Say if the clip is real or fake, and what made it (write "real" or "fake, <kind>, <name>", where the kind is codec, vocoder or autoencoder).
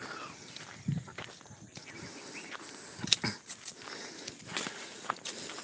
real